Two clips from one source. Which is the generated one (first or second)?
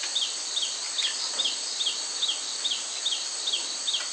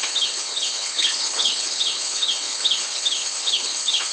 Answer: second